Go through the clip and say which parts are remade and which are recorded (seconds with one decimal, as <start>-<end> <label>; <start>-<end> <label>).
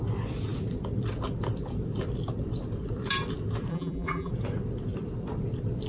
0.0-3.7 recorded; 3.7-4.3 remade; 4.3-5.9 recorded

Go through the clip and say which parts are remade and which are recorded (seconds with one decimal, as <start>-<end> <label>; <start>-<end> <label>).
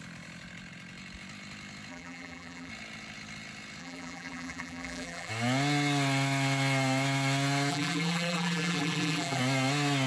0.0-1.9 recorded; 1.9-2.7 remade; 2.7-3.8 recorded; 3.8-5.3 remade; 5.3-7.7 recorded; 7.7-9.4 remade; 9.4-10.1 recorded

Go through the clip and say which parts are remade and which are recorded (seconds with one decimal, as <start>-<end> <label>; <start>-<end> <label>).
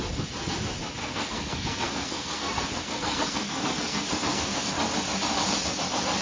0.0-1.0 recorded; 1.0-4.7 remade; 4.7-6.2 recorded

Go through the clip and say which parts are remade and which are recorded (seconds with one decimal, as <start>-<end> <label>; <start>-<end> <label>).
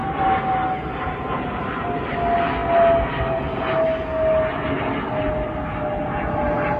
0.0-6.8 recorded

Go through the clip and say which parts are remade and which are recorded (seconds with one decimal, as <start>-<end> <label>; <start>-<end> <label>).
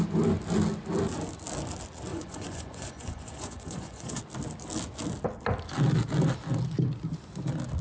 0.0-2.1 recorded; 2.1-4.2 remade; 4.2-7.8 recorded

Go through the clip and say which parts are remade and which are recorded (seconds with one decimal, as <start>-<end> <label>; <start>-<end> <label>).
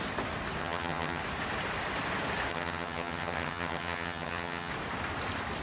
0.0-0.6 recorded; 0.6-1.2 remade; 1.2-2.5 recorded; 2.5-4.7 remade; 4.7-5.6 recorded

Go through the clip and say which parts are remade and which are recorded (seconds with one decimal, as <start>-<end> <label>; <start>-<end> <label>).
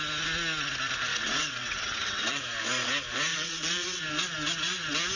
0.0-1.1 recorded; 1.1-2.4 remade; 2.4-3.3 recorded; 3.3-4.0 remade; 4.0-5.2 recorded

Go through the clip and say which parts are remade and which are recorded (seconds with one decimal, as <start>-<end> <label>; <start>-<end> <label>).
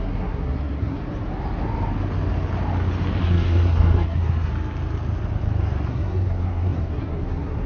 0.0-1.0 remade; 1.0-3.2 recorded; 3.2-4.5 remade; 4.5-5.9 recorded; 5.9-7.7 remade